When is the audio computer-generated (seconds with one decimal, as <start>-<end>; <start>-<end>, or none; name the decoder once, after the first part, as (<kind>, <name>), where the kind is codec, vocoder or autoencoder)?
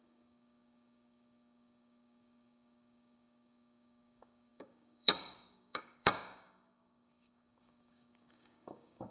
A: 0.0-9.1 (codec, DAC)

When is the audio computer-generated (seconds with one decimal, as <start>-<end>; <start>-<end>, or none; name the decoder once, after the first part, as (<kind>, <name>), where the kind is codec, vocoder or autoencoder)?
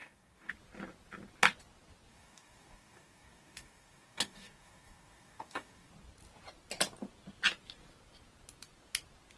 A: 0.0-0.5 (codec, DAC); 2.1-5.9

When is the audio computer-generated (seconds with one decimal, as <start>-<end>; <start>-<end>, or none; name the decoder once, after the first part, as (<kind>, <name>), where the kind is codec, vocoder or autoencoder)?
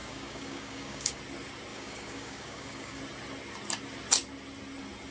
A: 0.0-1.2 (codec, DAC); 1.7-3.0